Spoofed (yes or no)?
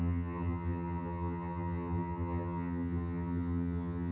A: yes